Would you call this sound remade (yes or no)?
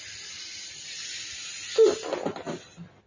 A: no